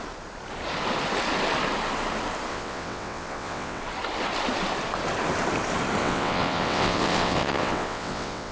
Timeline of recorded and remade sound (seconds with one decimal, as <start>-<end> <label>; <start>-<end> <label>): 0.0-2.5 recorded; 2.5-3.8 remade; 3.8-6.0 recorded; 6.0-8.5 remade

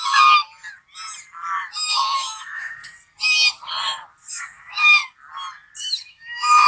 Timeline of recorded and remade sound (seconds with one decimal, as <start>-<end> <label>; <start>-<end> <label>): 0.0-0.4 remade; 0.4-1.9 recorded; 1.9-2.8 remade; 2.8-4.3 recorded; 4.3-5.0 remade; 5.0-5.8 recorded; 5.8-6.7 remade